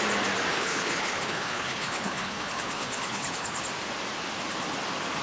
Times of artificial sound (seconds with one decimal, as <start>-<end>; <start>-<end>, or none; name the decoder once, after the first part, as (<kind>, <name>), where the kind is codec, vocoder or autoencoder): 0.5-3.6 (codec, HILCodec)